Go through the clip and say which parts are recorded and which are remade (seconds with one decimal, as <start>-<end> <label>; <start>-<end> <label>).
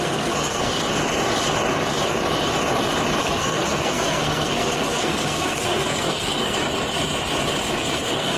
0.0-0.7 remade; 0.7-3.2 recorded; 3.2-6.6 remade; 6.6-7.7 recorded; 7.7-8.4 remade